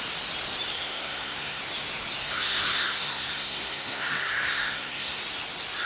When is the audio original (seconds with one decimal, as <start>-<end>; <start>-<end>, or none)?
0.0-0.7; 1.6-2.2; 5.2-5.9